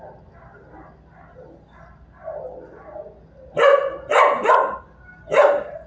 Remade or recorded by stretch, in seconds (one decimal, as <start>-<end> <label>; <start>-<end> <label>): 0.0-5.9 recorded